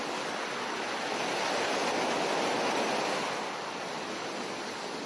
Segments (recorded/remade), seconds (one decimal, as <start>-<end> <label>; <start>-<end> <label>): 0.0-5.1 recorded